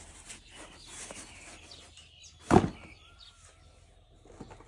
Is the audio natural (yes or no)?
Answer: yes